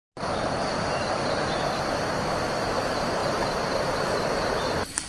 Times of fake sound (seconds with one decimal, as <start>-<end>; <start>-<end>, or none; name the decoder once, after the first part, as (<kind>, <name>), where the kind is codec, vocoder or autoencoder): 2.2-3.2 (vocoder, BigVGAN v2); 4.0-5.1

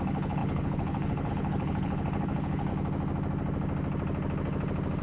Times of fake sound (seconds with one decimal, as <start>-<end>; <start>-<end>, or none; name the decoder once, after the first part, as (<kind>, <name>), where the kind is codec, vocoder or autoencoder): 0.0-2.7 (codec, HILCodec)

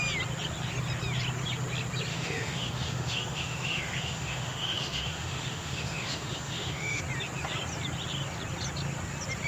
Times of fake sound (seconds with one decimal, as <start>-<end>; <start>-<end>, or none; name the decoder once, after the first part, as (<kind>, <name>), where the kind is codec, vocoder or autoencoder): 2.1-7.0 (autoencoder, DAC-VAE)

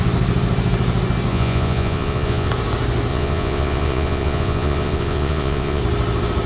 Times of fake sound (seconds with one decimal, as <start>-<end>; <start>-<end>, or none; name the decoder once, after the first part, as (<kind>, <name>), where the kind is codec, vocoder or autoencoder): 1.3-2.5 (vocoder, Vocos); 3.1-5.8

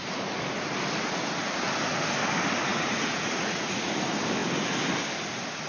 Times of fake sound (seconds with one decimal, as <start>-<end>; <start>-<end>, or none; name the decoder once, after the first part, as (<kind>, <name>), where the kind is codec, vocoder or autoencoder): 2.7-3.9 (vocoder, Vocos)

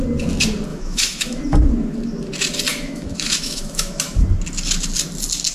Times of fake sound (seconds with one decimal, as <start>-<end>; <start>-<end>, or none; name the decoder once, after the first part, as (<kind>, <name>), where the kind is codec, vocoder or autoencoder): 0.7-1.4 (autoencoder, DAC-VAE); 2.7-4.2